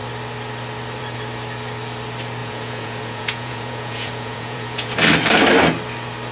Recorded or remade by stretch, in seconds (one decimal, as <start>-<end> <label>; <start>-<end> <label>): 0.0-2.4 recorded; 2.4-4.9 remade; 4.9-6.3 recorded